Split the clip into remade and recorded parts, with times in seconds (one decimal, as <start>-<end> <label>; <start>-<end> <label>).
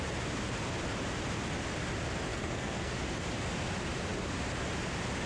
0.0-2.3 recorded; 2.3-2.9 remade; 2.9-5.3 recorded